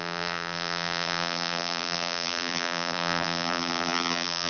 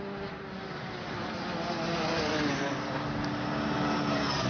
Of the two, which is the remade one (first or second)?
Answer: first